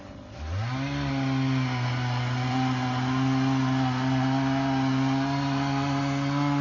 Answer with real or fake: real